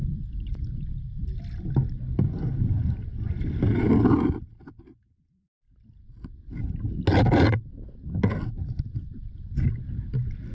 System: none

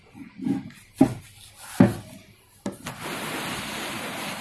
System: none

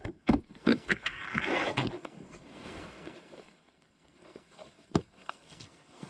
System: codec, SNAC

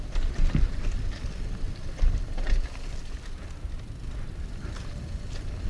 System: none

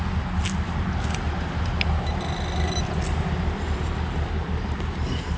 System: none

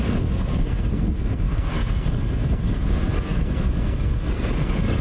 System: codec, SNAC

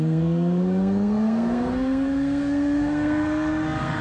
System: codec, SNAC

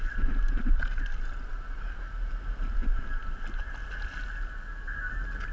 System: none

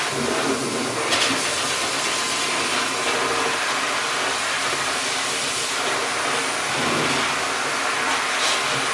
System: none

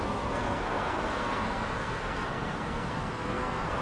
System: codec, SNAC